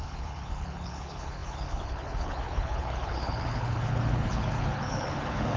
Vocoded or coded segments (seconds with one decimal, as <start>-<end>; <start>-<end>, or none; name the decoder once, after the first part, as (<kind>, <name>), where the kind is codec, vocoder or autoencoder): 0.0-5.6 (codec, HILCodec)